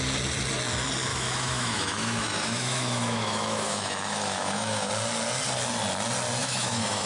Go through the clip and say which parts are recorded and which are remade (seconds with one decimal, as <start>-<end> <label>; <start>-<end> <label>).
0.0-1.1 recorded; 1.1-4.9 remade; 4.9-6.4 recorded; 6.4-7.1 remade